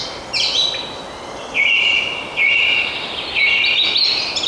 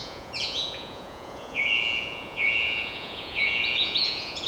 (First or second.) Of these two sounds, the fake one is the second